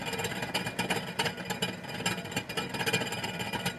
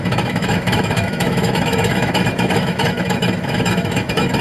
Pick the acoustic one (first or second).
first